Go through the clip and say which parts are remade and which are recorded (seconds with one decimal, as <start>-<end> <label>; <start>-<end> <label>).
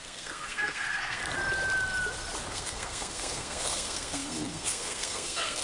0.0-1.2 remade; 1.2-2.5 recorded; 2.5-5.6 remade